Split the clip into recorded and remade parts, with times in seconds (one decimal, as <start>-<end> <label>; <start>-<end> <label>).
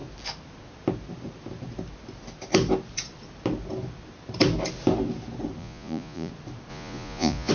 0.0-5.6 recorded; 5.6-6.3 remade; 6.3-6.7 recorded; 6.7-7.5 remade